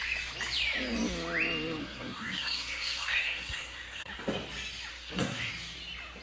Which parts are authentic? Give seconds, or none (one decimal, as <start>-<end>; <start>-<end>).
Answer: 0.0-1.8; 4.1-4.9; 5.5-6.2